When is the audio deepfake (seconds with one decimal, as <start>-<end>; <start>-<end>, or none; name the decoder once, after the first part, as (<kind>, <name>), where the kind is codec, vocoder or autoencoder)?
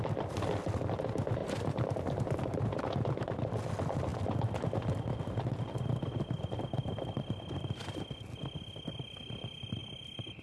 1.4-2.0 (vocoder, BigVGAN v2); 9.8-10.4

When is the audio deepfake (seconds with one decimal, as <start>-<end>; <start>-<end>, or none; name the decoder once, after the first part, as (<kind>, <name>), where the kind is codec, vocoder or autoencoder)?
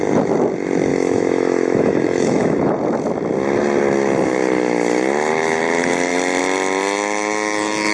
0.9-2.7 (autoencoder, DAC-VAE)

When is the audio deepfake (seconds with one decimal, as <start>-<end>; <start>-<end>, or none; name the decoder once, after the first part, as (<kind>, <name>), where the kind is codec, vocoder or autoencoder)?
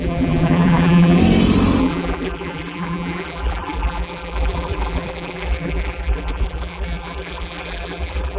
0.0-1.2 (vocoder, BigVGAN v2); 1.8-8.4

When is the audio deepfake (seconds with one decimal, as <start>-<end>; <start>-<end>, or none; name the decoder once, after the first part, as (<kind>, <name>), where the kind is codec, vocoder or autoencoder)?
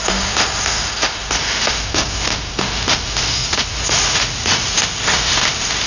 3.4-4.8 (vocoder, Vocos)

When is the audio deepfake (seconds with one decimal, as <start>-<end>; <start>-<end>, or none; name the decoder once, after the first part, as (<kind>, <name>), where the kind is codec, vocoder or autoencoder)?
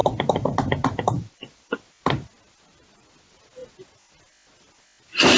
none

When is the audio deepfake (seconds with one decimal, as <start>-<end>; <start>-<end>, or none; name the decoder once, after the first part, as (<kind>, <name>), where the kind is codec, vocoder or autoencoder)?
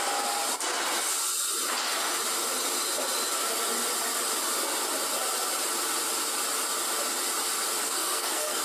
7.8-8.6 (codec, SNAC)